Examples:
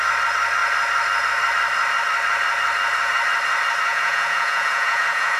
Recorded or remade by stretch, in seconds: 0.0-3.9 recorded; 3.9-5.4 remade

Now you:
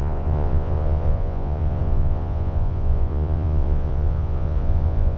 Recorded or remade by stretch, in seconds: 0.0-5.2 remade

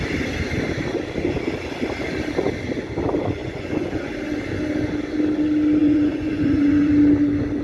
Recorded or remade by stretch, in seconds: 0.0-3.4 recorded; 3.4-4.1 remade; 4.1-5.8 recorded; 5.8-6.9 remade; 6.9-7.6 recorded

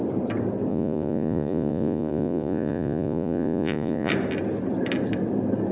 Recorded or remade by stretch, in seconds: 0.0-0.7 recorded; 0.7-4.1 remade; 4.1-5.7 recorded

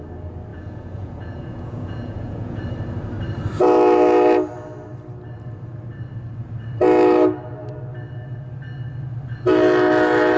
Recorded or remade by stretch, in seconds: 0.0-0.5 recorded; 0.5-2.6 remade; 2.6-10.4 recorded